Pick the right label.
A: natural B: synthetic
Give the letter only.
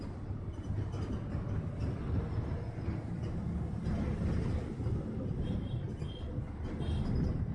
A